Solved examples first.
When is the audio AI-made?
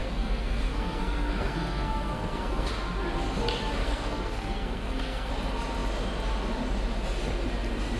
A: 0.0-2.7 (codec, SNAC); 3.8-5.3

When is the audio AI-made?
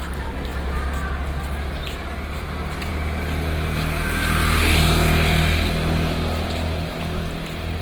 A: none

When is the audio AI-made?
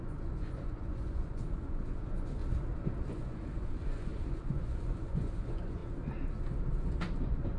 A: 0.0-2.4 (vocoder, Vocos); 3.1-5.8; 6.8-7.6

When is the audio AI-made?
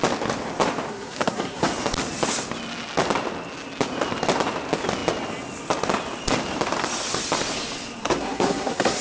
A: 0.9-1.7 (codec, SNAC); 8.0-9.0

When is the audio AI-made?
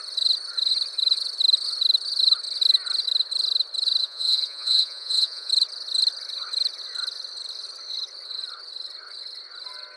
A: 4.0-5.5 (vocoder, Vocos)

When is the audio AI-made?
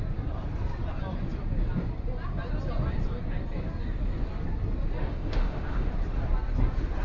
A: 5.0-5.9 (autoencoder, DAC-VAE)